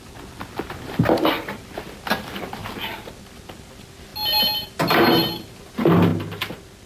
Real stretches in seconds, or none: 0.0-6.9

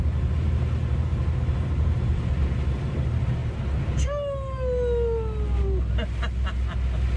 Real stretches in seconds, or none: 0.0-7.2

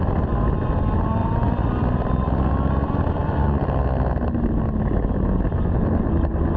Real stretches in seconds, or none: 0.0-1.2; 2.5-3.2; 3.8-6.6

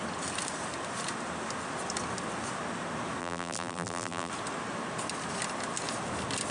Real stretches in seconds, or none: 0.0-3.2; 4.3-6.5

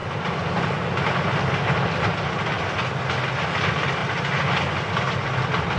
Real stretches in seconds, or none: 0.0-5.8

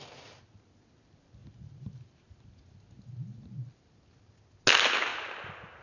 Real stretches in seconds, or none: 0.0-1.4; 2.4-5.1

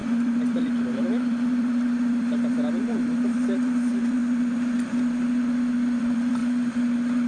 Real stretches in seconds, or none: 4.2-6.0; 6.4-7.3